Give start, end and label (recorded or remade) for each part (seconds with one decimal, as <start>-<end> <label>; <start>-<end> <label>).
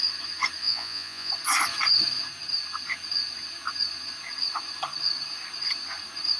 0.0-0.6 recorded; 0.6-1.3 remade; 1.3-6.4 recorded